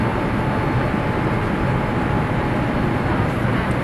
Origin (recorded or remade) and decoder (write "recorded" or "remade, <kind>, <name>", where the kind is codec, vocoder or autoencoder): recorded